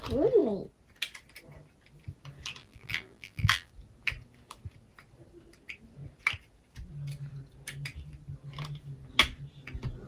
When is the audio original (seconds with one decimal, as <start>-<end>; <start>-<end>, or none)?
0.0-2.6; 3.7-10.1